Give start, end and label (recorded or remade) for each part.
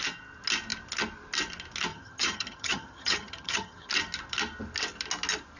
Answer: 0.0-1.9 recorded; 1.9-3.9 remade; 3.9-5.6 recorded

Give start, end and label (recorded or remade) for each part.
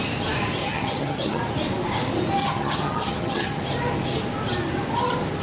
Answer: 0.0-0.6 recorded; 0.6-1.4 remade; 1.4-2.4 recorded; 2.4-3.6 remade; 3.6-5.4 recorded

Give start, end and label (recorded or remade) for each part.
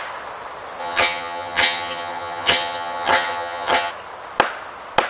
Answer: 0.0-0.8 recorded; 0.8-3.9 remade; 3.9-5.1 recorded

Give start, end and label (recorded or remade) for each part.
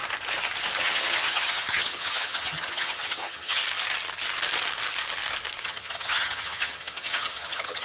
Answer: 0.0-0.8 recorded; 0.8-3.6 remade; 3.6-5.6 recorded; 5.6-7.8 remade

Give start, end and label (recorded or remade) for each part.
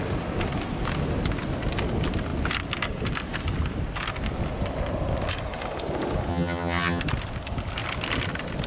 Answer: 0.0-6.3 recorded; 6.3-7.0 remade; 7.0-8.7 recorded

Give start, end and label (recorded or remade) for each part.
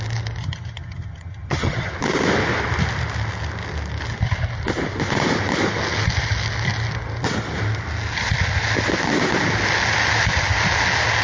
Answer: 0.0-0.4 recorded; 0.4-1.9 remade; 1.9-11.2 recorded